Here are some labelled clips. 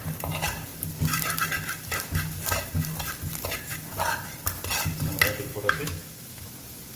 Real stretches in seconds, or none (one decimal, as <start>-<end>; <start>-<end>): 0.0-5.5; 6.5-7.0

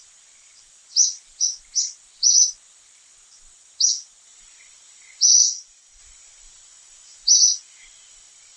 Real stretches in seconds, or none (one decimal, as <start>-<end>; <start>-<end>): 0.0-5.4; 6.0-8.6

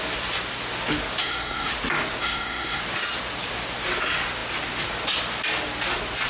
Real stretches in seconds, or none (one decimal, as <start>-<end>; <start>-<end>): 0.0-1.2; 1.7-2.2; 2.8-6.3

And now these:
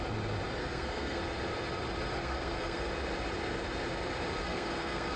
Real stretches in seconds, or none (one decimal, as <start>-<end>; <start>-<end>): 0.0-0.6; 1.2-2.2; 2.9-4.4

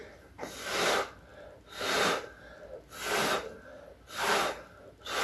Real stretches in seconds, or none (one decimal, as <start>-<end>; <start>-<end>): 0.0-5.2

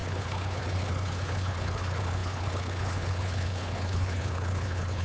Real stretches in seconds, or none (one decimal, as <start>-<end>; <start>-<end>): none